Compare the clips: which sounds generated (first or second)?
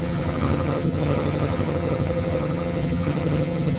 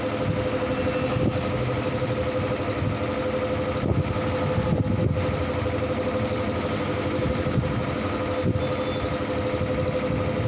first